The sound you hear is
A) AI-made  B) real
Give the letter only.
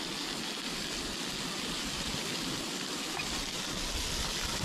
B